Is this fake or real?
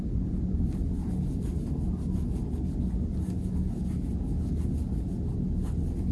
real